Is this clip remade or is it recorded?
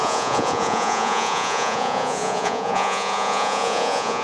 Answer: remade